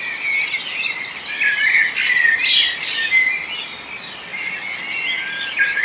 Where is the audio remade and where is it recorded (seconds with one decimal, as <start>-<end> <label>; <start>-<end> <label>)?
0.0-5.8 recorded